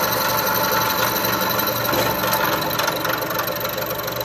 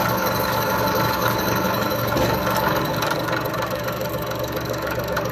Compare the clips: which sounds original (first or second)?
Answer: first